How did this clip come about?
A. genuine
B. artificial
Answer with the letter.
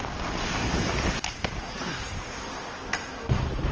A